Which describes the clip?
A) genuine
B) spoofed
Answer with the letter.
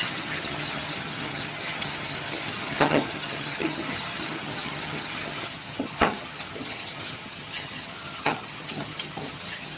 B